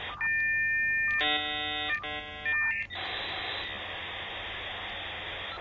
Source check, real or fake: real